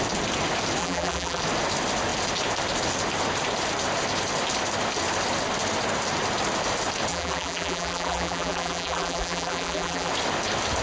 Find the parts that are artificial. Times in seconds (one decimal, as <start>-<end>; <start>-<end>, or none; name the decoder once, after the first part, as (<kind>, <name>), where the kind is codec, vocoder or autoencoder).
0.8-1.4 (vocoder, BigVGAN v2); 7.1-10.1